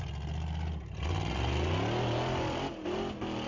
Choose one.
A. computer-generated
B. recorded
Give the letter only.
B